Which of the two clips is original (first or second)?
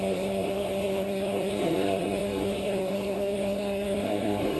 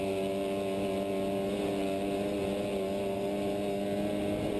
second